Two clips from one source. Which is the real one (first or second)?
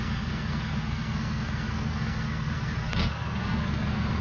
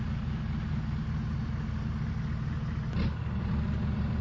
second